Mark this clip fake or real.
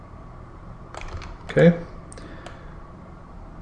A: real